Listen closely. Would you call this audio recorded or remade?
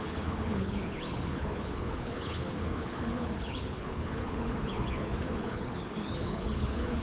remade